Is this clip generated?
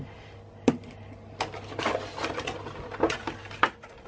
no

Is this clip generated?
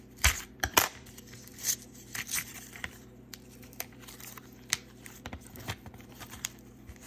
yes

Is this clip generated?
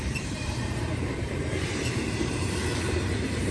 yes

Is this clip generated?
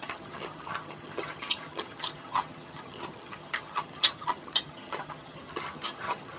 yes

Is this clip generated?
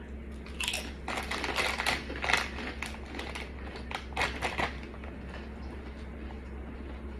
no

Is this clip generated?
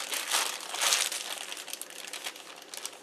no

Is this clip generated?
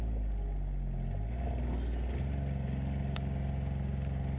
no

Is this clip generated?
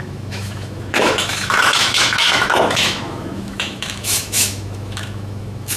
yes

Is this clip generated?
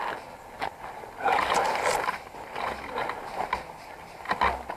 no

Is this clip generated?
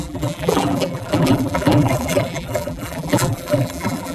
yes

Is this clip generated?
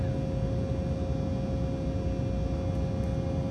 no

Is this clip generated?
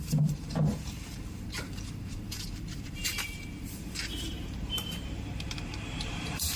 yes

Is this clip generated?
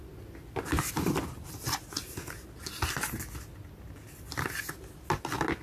no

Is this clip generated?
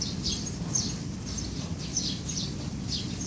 no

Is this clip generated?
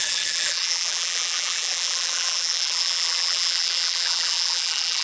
yes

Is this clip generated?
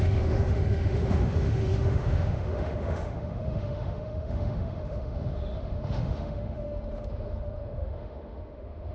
yes